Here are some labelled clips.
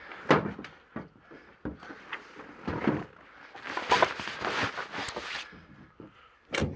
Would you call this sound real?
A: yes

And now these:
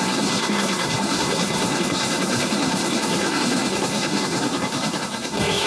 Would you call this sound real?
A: no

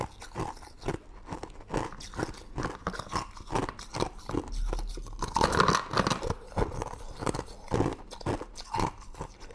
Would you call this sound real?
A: yes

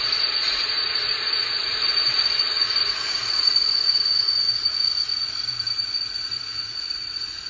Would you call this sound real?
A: no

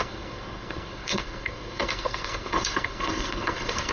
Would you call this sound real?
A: no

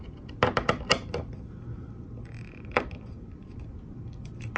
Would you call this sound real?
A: yes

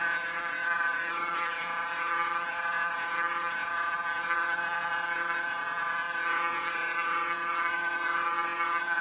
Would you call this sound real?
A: no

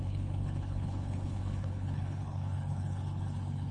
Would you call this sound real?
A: no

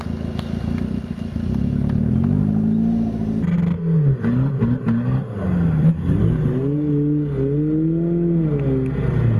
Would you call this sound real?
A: yes